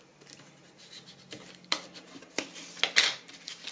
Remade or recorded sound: recorded